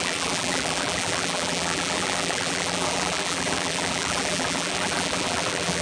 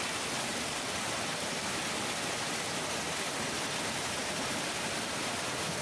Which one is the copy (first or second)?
first